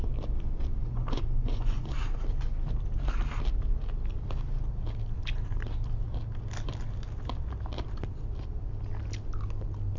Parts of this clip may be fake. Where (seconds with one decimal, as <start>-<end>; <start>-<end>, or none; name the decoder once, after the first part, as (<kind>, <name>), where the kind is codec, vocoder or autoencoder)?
0.8-1.9 (vocoder, Vocos)